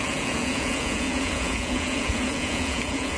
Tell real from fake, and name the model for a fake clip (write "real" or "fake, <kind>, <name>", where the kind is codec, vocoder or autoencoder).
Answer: fake, vocoder, Vocos